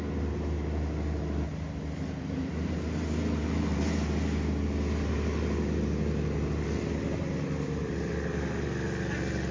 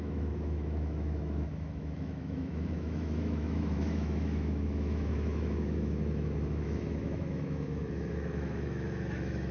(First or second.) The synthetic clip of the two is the second